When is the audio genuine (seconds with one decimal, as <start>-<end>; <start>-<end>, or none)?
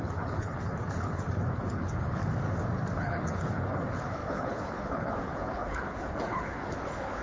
2.2-3.0